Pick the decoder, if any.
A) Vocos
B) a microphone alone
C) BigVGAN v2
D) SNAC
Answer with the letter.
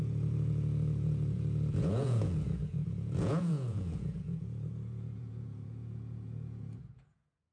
A